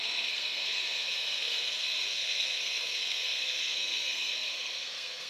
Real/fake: fake